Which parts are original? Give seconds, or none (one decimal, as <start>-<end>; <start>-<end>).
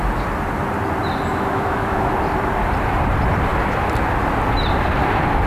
0.0-1.3; 2.1-5.5